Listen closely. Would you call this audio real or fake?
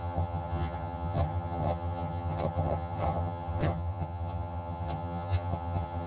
fake